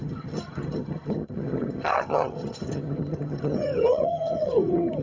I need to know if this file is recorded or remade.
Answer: remade